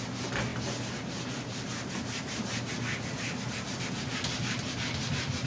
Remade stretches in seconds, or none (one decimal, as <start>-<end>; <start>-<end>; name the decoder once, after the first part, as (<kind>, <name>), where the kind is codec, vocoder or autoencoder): none